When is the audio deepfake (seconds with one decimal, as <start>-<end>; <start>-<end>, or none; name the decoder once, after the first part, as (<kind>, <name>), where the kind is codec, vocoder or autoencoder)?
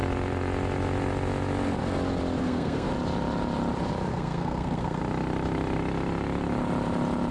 2.4-2.9 (codec, SNAC); 4.1-5.0